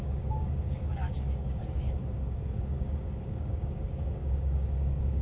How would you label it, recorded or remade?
remade